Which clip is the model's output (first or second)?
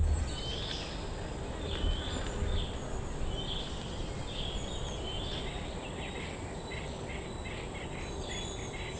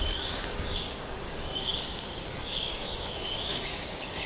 second